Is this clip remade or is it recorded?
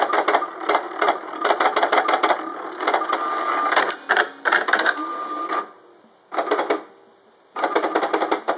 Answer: recorded